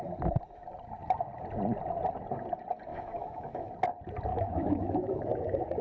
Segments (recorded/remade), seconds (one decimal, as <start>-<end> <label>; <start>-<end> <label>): 0.0-2.9 recorded; 2.9-3.7 remade; 3.7-4.3 recorded; 4.3-5.8 remade